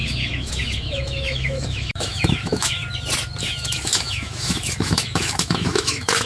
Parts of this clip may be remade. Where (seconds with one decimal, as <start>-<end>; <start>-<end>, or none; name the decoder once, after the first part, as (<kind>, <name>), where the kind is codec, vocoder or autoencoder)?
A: 0.0-2.8 (autoencoder, DAC-VAE); 3.4-6.3